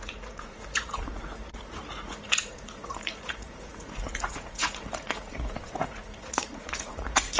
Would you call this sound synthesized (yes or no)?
yes